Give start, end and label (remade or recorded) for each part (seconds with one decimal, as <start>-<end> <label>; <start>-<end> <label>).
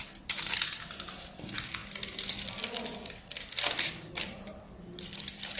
0.0-5.6 recorded